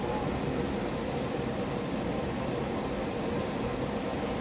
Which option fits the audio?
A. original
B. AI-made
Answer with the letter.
A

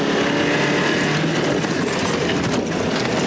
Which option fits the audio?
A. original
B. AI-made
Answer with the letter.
A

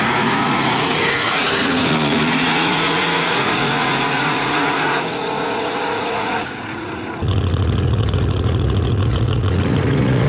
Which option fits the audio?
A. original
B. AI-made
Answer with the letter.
B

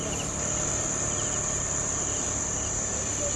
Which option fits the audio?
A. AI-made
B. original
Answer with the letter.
B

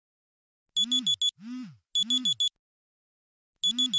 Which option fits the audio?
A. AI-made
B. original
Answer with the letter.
B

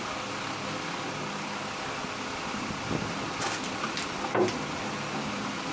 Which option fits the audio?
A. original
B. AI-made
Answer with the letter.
A